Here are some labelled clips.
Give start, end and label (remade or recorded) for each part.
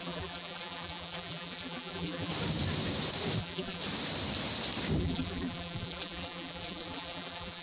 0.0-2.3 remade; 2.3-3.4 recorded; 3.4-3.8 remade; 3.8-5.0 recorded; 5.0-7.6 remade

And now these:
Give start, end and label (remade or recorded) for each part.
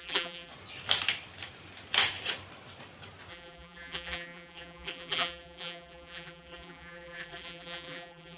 0.0-0.5 remade; 0.5-3.3 recorded; 3.3-8.4 remade